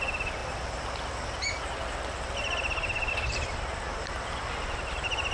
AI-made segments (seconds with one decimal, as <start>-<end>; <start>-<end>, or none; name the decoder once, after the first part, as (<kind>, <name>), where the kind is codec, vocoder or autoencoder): none